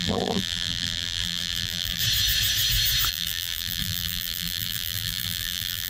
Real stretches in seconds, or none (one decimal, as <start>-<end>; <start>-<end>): 2.0-3.1